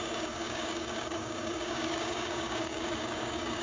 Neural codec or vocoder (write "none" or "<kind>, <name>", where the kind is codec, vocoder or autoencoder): codec, DAC